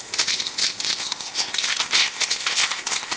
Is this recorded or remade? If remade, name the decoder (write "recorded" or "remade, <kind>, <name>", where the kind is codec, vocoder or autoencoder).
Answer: remade, codec, ZipCodec